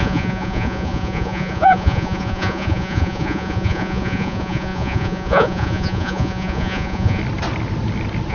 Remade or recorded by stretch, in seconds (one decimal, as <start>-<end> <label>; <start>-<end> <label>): 0.0-7.2 remade; 7.2-8.3 recorded